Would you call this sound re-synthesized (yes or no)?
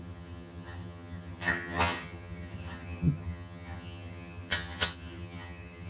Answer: yes